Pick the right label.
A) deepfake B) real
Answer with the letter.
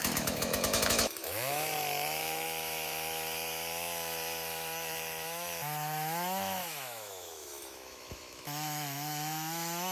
A